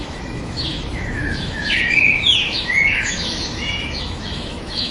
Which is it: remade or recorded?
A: remade